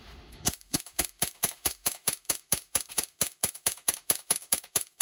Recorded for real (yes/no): no